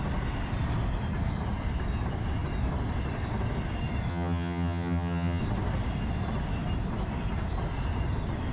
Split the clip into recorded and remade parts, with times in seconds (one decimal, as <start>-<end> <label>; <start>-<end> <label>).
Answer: 0.0-4.1 recorded; 4.1-5.4 remade; 5.4-8.5 recorded